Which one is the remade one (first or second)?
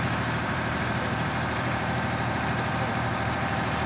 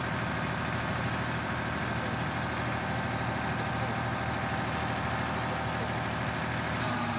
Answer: first